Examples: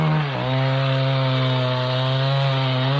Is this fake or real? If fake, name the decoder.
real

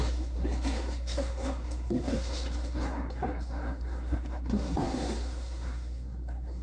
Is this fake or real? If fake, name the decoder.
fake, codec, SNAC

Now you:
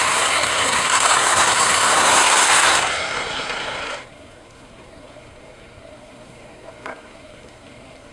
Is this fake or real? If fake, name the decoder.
fake, codec, SNAC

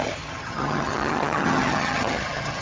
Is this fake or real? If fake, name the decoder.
fake, vocoder, HiFi-GAN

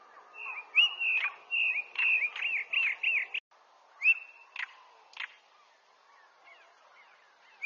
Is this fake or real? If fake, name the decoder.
real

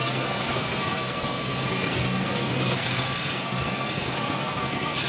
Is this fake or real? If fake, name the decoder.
fake, codec, SNAC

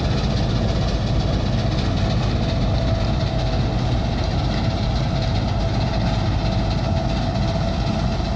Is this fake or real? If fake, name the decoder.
real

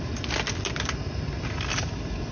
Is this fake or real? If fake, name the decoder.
real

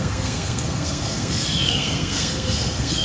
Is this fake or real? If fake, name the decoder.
fake, codec, SNAC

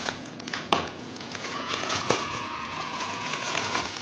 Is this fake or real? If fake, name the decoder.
fake, vocoder, Vocos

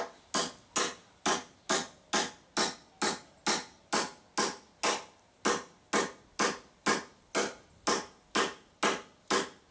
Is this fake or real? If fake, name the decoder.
real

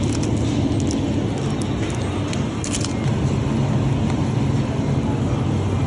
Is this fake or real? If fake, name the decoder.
real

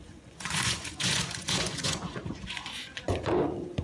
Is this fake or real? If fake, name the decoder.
fake, vocoder, Vocos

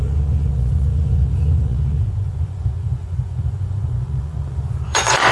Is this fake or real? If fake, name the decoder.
fake, vocoder, Vocos